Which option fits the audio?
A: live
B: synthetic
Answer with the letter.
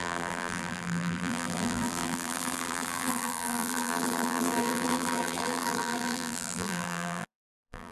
B